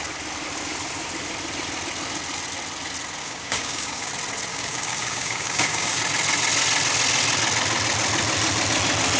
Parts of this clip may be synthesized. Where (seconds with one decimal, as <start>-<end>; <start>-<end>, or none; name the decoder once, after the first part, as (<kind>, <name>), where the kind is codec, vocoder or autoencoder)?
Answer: 3.2-4.1 (codec, DAC); 4.5-6.0